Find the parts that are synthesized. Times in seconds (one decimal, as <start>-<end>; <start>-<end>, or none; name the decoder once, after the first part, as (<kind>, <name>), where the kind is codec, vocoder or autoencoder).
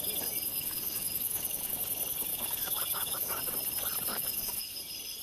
0.5-1.8 (codec, DAC); 2.3-3.4; 4.1-4.8